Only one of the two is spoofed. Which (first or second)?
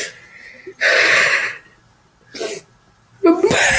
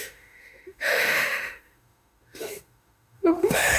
second